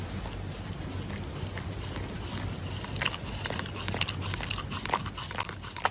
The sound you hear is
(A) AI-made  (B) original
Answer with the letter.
B